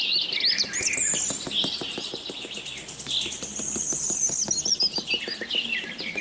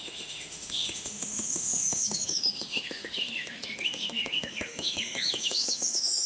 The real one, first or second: first